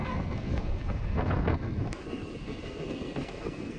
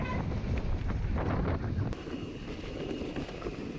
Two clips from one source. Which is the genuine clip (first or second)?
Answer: second